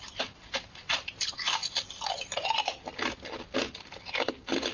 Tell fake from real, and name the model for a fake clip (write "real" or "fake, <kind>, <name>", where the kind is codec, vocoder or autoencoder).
real